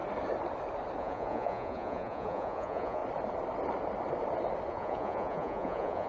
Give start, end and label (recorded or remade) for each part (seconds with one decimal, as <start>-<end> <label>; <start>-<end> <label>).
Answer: 0.0-1.0 recorded; 1.0-3.0 remade; 3.0-4.7 recorded; 4.7-6.1 remade